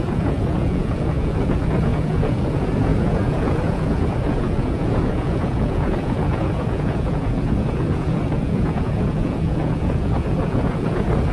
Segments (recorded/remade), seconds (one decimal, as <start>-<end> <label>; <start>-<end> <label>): 0.0-11.3 remade